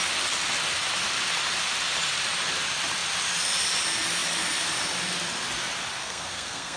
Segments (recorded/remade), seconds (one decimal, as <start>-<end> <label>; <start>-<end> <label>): 0.0-6.0 recorded; 6.0-6.8 remade